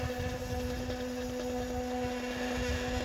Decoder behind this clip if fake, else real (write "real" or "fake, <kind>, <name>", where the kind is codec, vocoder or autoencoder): real